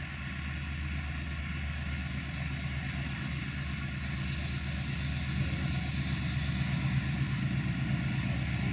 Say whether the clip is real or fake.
real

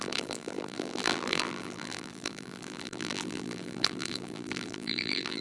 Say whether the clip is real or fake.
fake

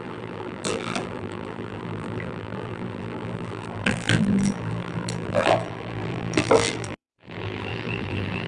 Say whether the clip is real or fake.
fake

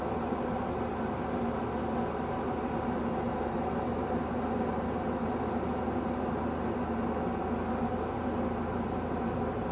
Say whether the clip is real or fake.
real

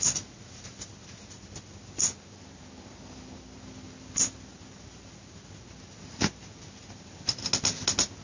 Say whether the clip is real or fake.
real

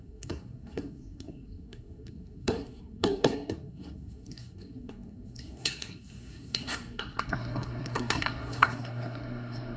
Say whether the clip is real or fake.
fake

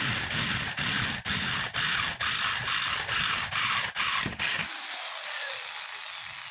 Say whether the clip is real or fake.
real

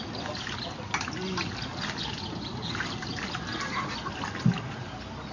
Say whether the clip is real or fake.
real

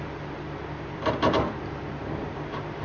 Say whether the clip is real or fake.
fake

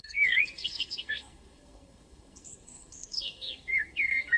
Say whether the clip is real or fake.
fake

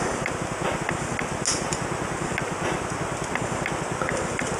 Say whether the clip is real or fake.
real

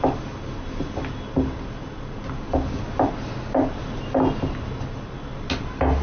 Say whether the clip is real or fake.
real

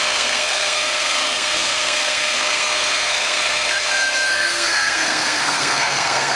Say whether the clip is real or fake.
fake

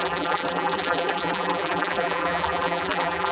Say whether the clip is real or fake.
fake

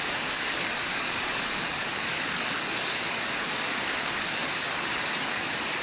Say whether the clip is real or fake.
fake